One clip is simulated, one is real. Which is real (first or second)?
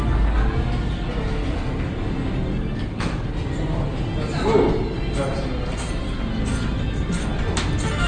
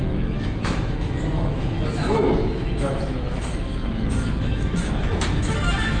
first